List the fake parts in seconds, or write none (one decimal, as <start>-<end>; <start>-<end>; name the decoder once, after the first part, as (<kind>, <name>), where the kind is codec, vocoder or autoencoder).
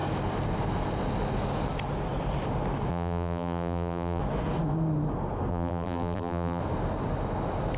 2.9-4.2 (vocoder, BigVGAN v2); 5.5-6.6